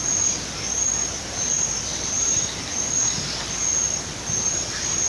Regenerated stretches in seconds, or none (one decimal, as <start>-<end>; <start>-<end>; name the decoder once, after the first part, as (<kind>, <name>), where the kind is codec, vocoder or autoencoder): 1.9-2.7 (vocoder, BigVGAN v2)